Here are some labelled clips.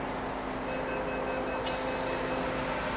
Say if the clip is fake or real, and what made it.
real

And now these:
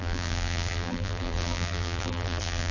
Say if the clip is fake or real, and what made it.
fake, vocoder, BigVGAN v2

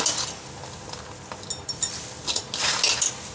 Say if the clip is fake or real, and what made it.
real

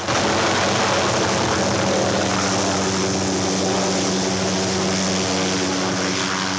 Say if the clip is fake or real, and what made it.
real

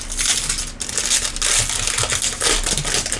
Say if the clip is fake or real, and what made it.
real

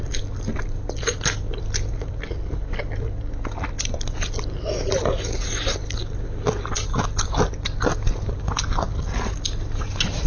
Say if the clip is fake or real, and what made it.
real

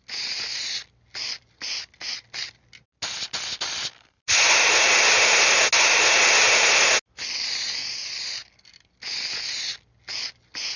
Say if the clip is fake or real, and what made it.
real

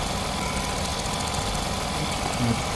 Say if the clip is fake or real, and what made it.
real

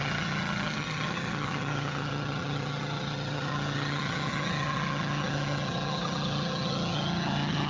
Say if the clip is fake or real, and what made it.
fake, vocoder, HiFi-GAN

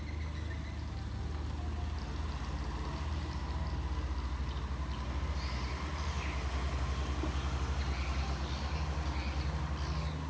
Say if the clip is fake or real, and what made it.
real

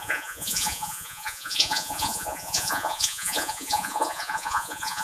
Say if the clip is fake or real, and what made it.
fake, vocoder, Vocos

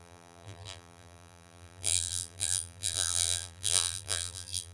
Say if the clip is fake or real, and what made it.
fake, vocoder, BigVGAN v2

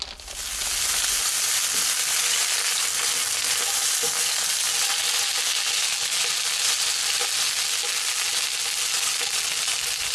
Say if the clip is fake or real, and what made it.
real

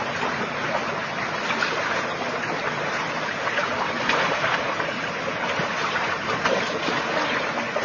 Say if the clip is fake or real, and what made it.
real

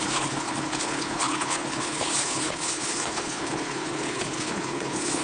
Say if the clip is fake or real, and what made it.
fake, codec, HILCodec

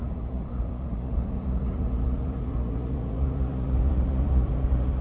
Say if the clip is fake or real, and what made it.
fake, vocoder, Vocos